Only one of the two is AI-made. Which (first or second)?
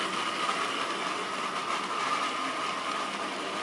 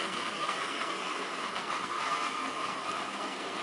second